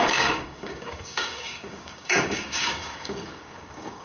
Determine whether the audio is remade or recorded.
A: remade